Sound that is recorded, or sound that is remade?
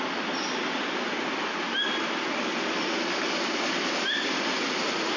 recorded